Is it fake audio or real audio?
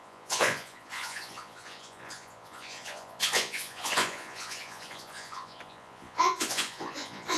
fake